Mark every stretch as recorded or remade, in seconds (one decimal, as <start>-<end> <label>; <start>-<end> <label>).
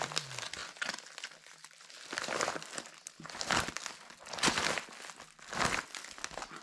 0.0-6.6 recorded